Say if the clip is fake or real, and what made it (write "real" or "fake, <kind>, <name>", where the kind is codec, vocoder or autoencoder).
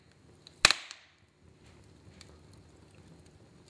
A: real